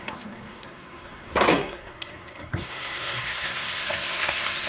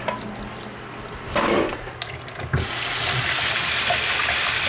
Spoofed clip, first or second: first